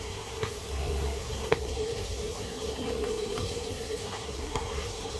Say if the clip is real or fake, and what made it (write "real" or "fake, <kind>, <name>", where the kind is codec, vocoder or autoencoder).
fake, codec, SNAC